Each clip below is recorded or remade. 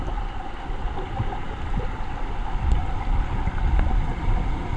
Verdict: recorded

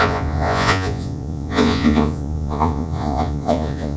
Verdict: remade